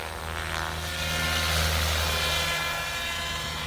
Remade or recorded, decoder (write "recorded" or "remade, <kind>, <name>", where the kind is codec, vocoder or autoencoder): recorded